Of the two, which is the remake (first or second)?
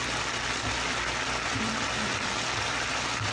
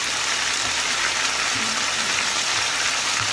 second